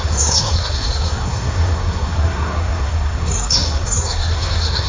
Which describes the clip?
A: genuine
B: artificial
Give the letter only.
B